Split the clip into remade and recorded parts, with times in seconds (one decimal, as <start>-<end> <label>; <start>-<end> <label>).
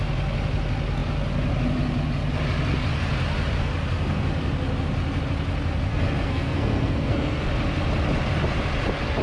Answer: 0.0-5.9 recorded; 5.9-7.5 remade; 7.5-9.2 recorded